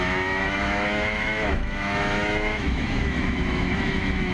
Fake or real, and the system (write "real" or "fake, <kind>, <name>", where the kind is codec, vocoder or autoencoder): fake, autoencoder, DAC-VAE